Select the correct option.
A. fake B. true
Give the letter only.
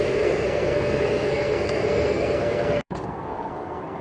A